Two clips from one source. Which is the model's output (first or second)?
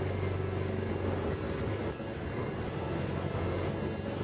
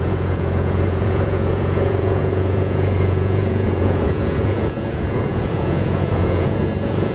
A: second